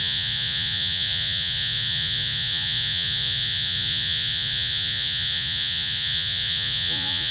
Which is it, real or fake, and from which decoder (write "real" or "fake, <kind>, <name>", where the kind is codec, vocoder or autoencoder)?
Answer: fake, vocoder, Vocos